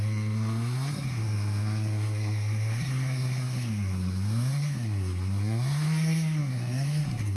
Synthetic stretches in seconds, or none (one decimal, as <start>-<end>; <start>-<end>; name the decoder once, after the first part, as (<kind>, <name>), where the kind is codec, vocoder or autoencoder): 0.0-7.4 (codec, SNAC)